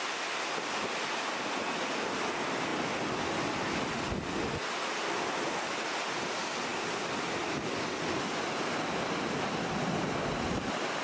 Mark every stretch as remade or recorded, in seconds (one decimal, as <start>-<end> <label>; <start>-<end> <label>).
0.0-11.0 recorded